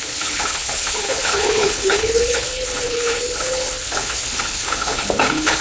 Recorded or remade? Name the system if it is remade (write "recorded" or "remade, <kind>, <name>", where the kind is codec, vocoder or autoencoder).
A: remade, codec, HILCodec